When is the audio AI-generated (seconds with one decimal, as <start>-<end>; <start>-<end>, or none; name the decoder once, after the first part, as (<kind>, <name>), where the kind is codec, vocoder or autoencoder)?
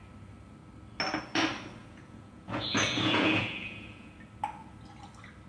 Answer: 1.8-4.1 (vocoder, Vocos)